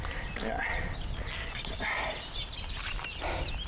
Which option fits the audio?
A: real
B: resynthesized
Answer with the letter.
A